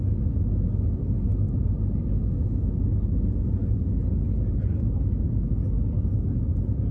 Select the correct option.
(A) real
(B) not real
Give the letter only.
A